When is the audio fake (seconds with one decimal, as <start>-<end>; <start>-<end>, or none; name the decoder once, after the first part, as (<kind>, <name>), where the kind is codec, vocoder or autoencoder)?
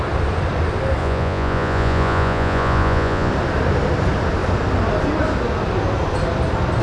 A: 1.0-3.3 (vocoder, Vocos)